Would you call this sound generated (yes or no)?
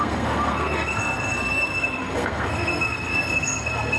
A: yes